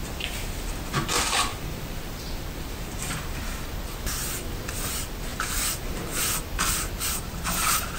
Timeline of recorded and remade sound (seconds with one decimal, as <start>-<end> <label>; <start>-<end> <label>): 0.0-1.5 recorded; 1.5-4.0 remade; 4.0-5.3 recorded; 5.3-6.2 remade; 6.2-8.0 recorded